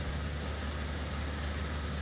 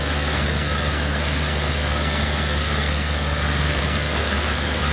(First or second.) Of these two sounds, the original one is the first